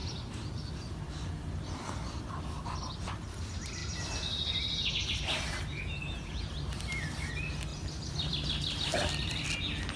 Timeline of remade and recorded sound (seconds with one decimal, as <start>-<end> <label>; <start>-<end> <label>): 0.0-5.7 recorded; 5.7-6.5 remade; 6.5-10.0 recorded